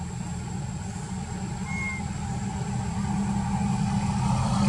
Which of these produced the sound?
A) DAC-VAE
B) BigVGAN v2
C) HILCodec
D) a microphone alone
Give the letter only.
D